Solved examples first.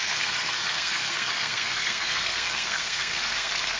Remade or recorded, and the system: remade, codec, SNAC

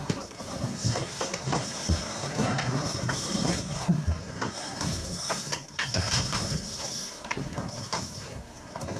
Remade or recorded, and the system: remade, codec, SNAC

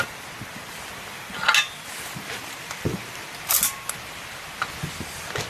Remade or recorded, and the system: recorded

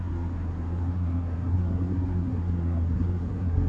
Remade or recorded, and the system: remade, codec, SNAC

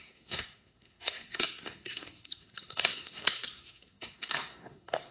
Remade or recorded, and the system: remade, codec, SNAC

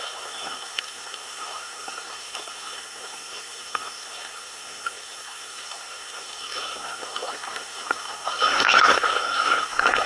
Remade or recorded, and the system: remade, codec, SNAC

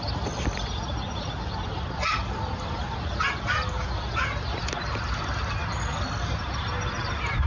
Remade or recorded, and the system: recorded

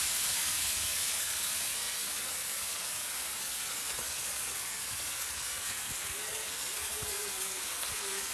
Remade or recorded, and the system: remade, codec, SNAC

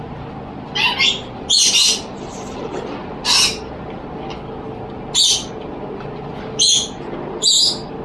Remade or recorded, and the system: recorded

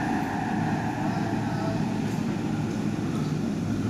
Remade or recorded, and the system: recorded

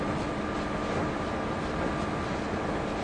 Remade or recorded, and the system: recorded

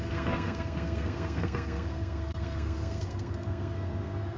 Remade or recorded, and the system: remade, codec, SNAC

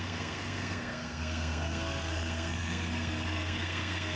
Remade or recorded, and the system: remade, codec, SNAC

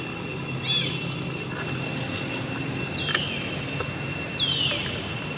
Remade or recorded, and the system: recorded